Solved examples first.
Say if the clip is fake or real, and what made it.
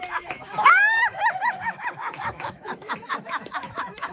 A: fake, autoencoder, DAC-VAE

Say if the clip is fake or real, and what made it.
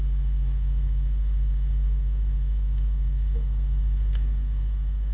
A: fake, codec, SNAC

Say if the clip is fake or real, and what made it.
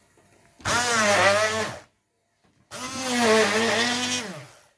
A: real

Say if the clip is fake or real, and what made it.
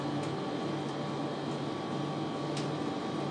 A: real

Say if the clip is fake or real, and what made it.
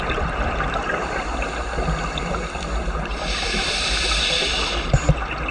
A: fake, vocoder, BigVGAN v2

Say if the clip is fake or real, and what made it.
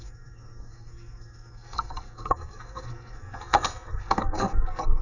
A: fake, codec, SNAC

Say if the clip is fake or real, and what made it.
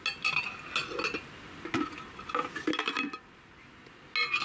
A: real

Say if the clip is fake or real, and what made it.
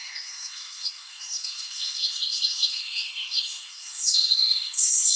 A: fake, codec, SNAC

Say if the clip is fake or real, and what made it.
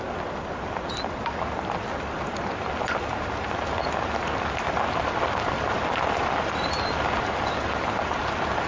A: real